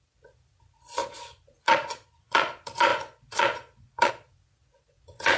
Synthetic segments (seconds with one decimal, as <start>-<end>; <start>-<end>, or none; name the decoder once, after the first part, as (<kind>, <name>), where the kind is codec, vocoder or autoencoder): 0.0-5.4 (vocoder, Vocos)